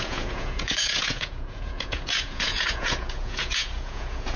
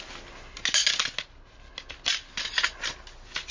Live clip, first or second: second